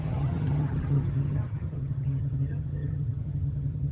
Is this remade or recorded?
remade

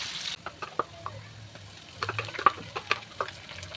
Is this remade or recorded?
recorded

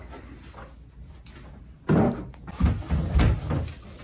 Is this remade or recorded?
recorded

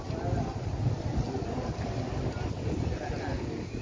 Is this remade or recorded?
recorded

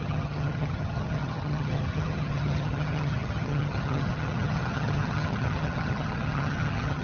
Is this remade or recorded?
remade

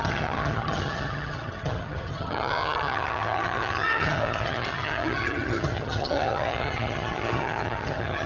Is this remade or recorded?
remade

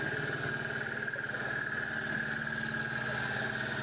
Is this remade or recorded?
recorded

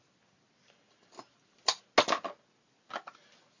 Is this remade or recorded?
recorded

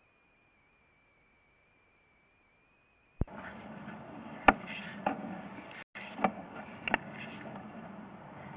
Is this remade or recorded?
recorded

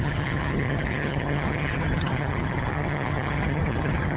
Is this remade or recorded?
remade